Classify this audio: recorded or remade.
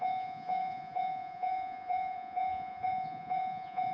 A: remade